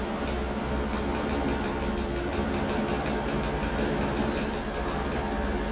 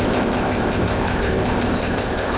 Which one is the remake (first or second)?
second